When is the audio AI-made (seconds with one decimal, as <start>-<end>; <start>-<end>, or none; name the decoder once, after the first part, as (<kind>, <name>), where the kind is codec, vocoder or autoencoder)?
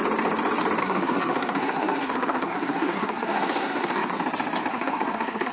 0.8-4.1 (codec, SNAC); 4.7-5.5